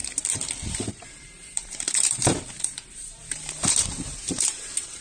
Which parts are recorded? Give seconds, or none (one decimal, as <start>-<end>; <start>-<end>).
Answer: 0.0-0.9